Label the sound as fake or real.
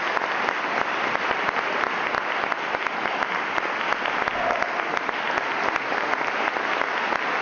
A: real